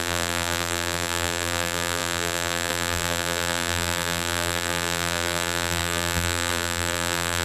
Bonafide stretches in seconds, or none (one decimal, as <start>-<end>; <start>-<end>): none